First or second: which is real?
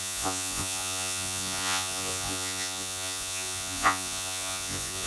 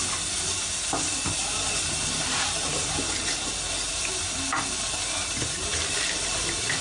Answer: second